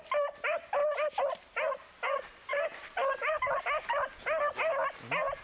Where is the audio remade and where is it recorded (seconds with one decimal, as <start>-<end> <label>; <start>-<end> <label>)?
0.0-2.5 recorded; 2.5-3.6 remade; 3.6-5.4 recorded